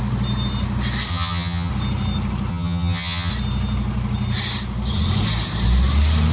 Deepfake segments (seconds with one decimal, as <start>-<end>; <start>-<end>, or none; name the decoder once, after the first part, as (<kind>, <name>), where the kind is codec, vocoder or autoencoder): 1.1-1.7 (vocoder, HiFi-GAN); 2.5-3.3